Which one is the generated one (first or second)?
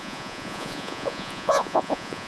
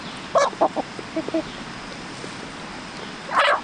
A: first